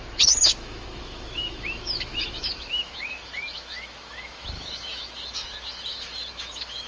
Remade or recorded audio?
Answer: remade